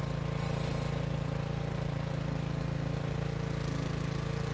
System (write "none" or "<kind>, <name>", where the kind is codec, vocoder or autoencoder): none